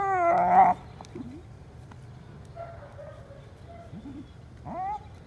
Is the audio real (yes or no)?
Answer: yes